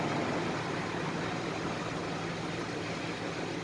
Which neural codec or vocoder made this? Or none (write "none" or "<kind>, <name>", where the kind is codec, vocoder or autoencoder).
none